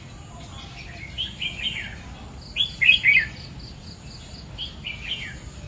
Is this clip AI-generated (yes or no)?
no